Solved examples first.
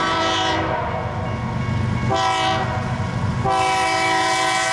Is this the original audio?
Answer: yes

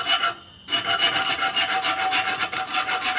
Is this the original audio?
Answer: yes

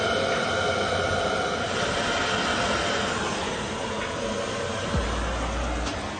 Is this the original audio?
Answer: yes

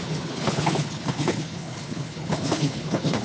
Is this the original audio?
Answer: no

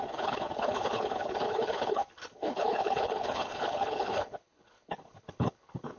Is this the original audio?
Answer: no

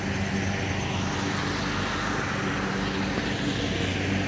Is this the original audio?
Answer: yes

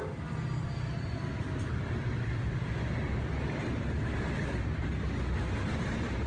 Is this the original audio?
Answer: yes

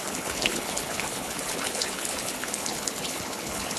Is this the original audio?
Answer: no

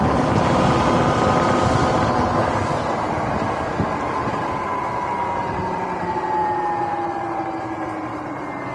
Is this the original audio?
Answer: yes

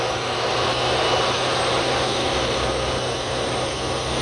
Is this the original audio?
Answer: yes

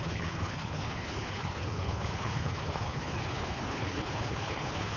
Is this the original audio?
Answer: no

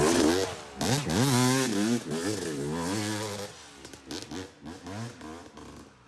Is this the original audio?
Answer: yes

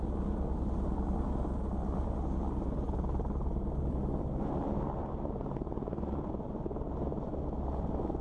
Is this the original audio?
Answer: yes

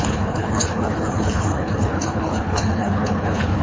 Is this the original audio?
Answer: no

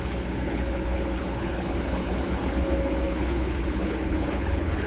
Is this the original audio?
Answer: no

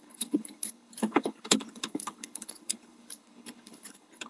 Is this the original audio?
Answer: no